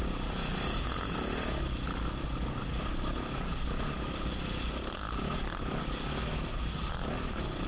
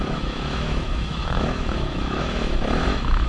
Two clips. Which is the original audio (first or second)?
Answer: first